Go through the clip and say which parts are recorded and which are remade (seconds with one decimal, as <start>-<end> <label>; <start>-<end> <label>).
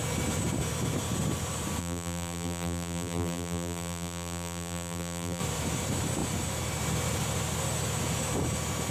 0.0-1.8 recorded; 1.8-5.4 remade; 5.4-8.9 recorded